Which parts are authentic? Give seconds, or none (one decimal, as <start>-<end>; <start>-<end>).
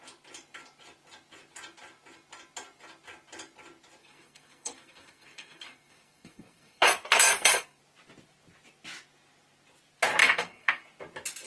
0.0-4.0; 7.8-10.2; 10.8-11.5